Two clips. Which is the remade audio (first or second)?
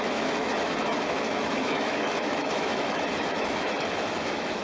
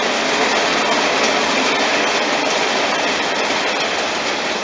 first